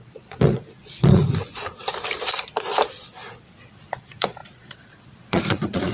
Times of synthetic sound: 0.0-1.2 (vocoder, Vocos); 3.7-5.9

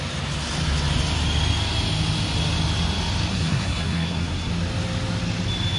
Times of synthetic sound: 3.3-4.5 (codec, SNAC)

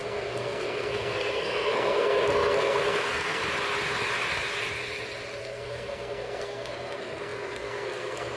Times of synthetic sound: 0.0-3.4 (codec, SNAC); 5.4-8.4

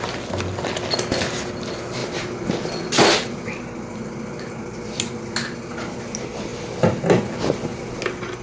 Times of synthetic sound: none

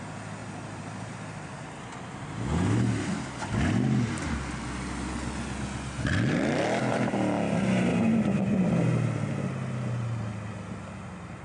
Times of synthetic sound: 0.4-1.1 (vocoder, BigVGAN v2); 7.9-8.7

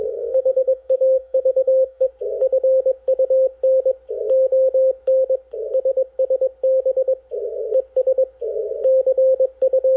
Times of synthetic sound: 0.0-2.1 (codec, SNAC)